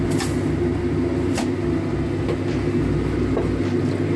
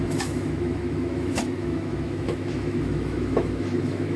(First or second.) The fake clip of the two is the second